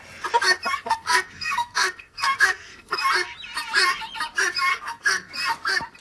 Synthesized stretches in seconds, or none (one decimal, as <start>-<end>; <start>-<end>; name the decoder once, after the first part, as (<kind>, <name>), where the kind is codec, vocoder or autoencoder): 0.8-3.0 (codec, SNAC); 4.7-5.3